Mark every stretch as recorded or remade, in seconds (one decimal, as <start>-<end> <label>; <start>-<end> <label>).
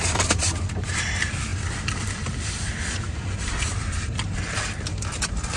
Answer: 0.0-1.5 recorded; 1.5-4.6 remade; 4.6-5.6 recorded